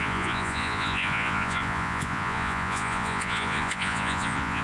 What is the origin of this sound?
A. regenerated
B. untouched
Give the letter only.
A